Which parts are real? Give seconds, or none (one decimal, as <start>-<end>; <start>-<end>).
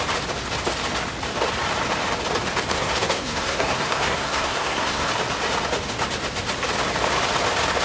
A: 0.0-2.7; 5.1-7.8